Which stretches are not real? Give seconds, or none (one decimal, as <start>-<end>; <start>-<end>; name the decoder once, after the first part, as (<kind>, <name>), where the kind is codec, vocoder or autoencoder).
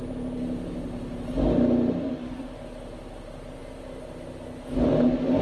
none